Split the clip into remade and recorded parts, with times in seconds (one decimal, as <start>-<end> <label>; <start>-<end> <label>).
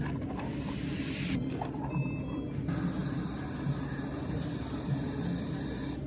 0.0-2.3 remade; 2.3-6.1 recorded